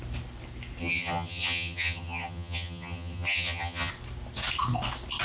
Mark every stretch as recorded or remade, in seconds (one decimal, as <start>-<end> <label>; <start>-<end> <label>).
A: 0.0-0.8 recorded; 0.8-3.9 remade; 3.9-5.2 recorded

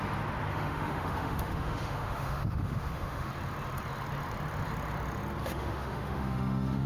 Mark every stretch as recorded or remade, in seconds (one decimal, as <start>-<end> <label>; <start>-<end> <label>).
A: 0.0-0.5 recorded; 0.5-3.3 remade; 3.3-5.4 recorded; 5.4-6.9 remade

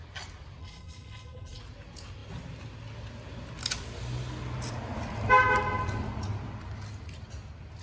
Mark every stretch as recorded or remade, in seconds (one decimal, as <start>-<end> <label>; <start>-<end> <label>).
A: 0.0-0.6 recorded; 0.6-1.6 remade; 1.6-7.8 recorded

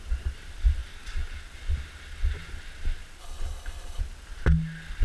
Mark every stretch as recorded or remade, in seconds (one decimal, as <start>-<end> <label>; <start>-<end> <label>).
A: 0.0-3.2 recorded; 3.2-4.0 remade; 4.0-5.0 recorded

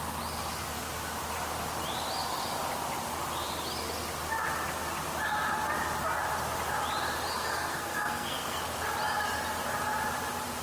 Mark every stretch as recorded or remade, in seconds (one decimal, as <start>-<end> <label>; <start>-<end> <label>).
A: 0.0-7.3 recorded; 7.3-8.6 remade; 8.6-10.6 recorded

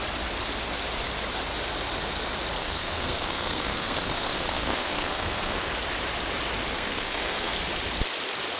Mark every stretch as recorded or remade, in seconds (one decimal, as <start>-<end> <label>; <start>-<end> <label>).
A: 0.0-2.6 recorded; 2.6-5.7 remade; 5.7-6.7 recorded; 6.7-7.5 remade; 7.5-8.6 recorded

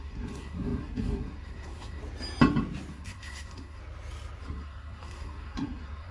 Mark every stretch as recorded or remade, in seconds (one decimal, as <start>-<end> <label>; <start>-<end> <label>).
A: 0.0-2.0 remade; 2.0-2.9 recorded; 2.9-3.8 remade; 3.8-4.4 recorded; 4.4-6.1 remade